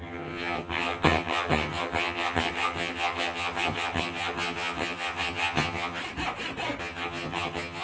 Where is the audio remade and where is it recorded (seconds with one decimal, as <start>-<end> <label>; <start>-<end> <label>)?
0.0-6.0 remade; 6.0-6.8 recorded; 6.8-7.8 remade